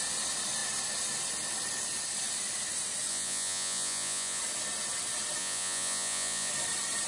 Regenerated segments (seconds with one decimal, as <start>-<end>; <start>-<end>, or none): 3.1-4.4; 5.4-6.5